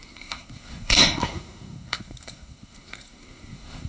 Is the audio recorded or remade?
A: remade